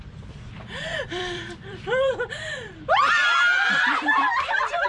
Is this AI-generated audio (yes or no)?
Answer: yes